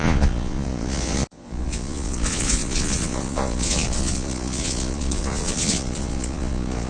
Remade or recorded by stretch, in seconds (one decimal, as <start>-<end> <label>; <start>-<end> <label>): 0.0-6.9 remade